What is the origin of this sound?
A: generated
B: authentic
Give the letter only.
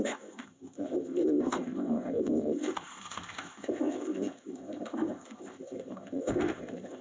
A